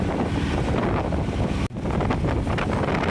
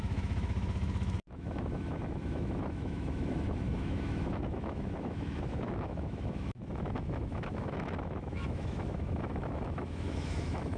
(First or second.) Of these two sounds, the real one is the first